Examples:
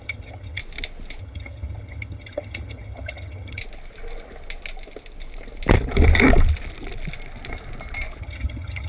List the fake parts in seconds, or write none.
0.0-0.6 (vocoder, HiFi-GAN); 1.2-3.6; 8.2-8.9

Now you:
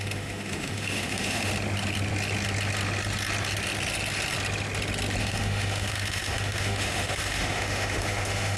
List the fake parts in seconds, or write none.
0.0-1.5 (autoencoder, DAC-VAE); 5.2-8.6

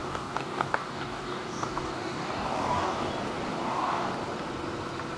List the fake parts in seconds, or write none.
0.0-3.1 (codec, DAC); 3.5-4.1

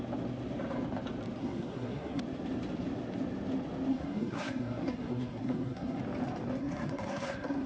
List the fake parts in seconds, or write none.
1.4-2.2 (codec, SNAC); 3.9-6.0; 6.6-7.7